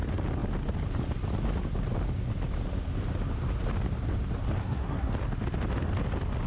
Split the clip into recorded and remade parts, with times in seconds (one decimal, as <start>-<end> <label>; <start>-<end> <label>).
0.0-4.6 recorded; 4.6-5.1 remade; 5.1-6.5 recorded

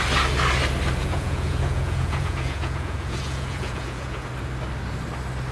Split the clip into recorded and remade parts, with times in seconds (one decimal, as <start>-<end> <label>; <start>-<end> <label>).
0.0-1.0 recorded; 1.0-4.3 remade; 4.3-5.5 recorded

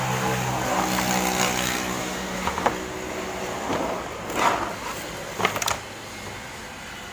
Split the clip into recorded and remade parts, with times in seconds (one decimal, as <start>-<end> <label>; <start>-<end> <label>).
0.0-2.0 recorded; 2.0-2.7 remade; 2.7-7.1 recorded

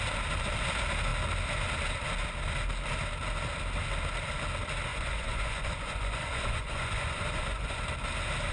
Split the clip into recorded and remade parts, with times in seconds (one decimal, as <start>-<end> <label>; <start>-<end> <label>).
0.0-4.9 recorded; 4.9-7.8 remade; 7.8-8.5 recorded

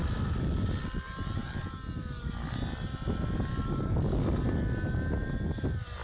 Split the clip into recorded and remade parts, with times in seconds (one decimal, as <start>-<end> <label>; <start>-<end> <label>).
0.0-6.0 recorded